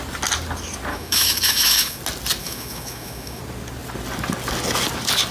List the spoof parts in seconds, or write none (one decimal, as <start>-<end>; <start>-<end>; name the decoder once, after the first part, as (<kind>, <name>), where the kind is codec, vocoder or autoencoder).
0.9-2.0 (autoencoder, DAC-VAE); 2.4-3.4